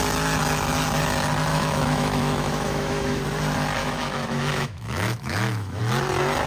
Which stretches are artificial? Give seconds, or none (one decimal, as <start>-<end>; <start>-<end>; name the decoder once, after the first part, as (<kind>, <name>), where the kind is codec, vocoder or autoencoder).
1.5-3.2 (autoencoder, DAC-VAE); 3.8-5.8